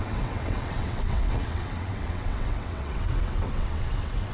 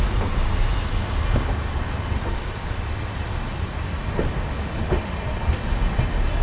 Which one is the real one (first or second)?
second